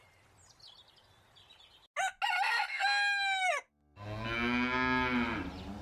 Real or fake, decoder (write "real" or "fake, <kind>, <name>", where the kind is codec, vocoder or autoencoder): real